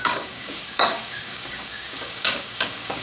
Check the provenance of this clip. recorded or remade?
remade